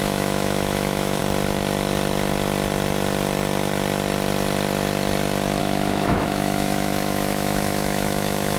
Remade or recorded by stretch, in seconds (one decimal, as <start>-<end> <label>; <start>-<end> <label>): 0.0-1.2 remade; 1.2-5.6 recorded; 5.6-8.6 remade